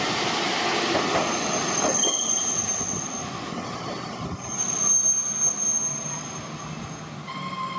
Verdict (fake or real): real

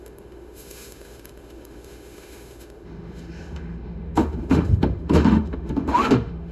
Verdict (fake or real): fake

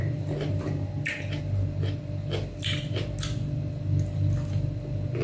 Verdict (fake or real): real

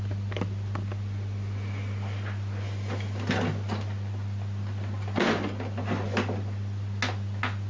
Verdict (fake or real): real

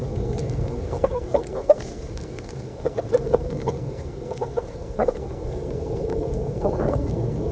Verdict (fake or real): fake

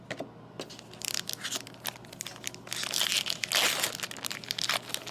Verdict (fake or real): real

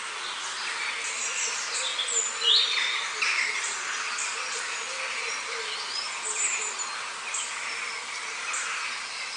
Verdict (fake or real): real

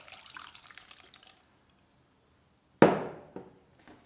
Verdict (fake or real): real